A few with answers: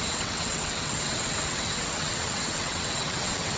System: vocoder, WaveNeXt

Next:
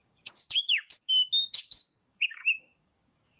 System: codec, DAC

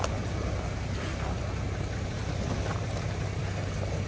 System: none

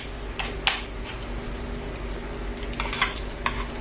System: none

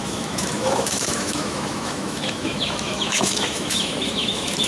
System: autoencoder, DAC-VAE